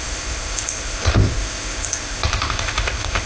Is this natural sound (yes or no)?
no